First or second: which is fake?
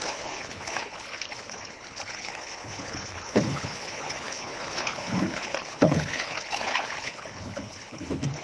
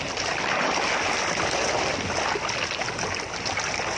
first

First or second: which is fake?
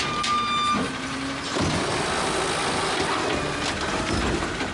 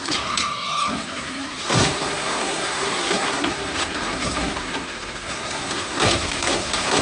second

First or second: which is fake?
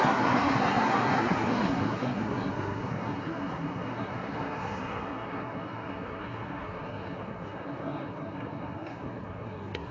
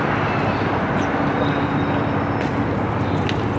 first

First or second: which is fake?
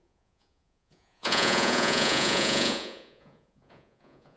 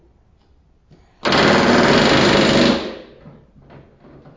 first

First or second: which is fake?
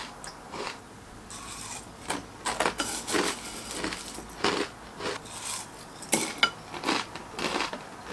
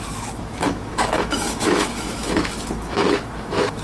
second